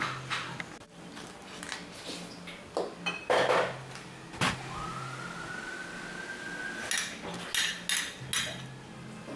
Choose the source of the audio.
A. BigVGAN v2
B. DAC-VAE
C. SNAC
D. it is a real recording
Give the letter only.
D